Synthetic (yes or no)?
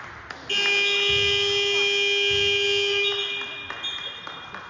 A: no